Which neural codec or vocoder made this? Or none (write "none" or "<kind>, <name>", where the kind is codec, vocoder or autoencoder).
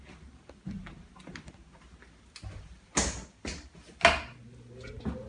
none